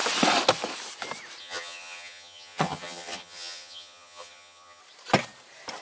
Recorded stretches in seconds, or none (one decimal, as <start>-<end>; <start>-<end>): 0.0-1.4; 4.8-5.8